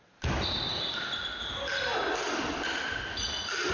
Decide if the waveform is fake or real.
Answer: real